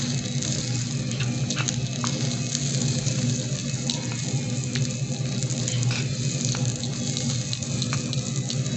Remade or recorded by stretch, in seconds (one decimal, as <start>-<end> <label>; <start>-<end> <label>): 0.0-8.8 recorded